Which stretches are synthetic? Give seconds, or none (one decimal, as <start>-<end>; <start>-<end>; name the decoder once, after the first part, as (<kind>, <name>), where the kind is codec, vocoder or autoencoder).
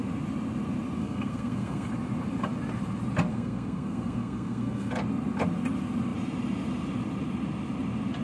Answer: 1.0-1.9 (codec, SNAC); 3.3-4.9